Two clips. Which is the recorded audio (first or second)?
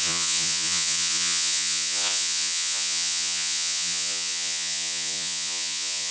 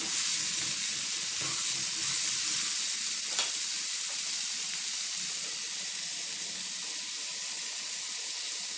second